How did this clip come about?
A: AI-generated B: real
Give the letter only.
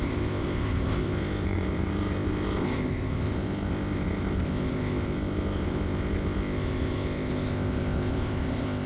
A